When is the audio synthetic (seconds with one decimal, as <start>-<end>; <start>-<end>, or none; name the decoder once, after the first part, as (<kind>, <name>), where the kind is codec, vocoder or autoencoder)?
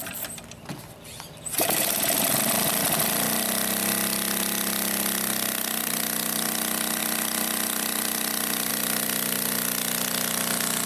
none